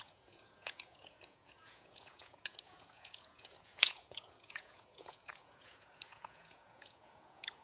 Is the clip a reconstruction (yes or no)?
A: yes